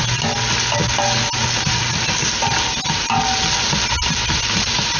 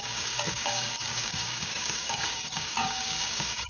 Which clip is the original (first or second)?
first